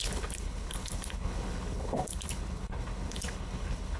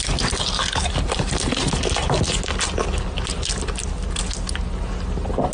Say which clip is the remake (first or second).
first